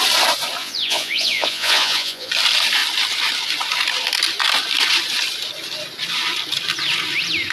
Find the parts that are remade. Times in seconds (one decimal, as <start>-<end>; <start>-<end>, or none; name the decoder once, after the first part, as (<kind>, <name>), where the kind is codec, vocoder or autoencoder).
0.6-2.3 (vocoder, Vocos)